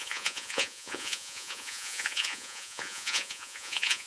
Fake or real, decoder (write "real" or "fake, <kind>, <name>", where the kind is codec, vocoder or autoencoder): fake, vocoder, Vocos